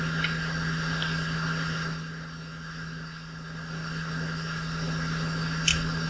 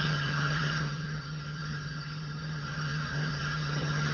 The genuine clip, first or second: first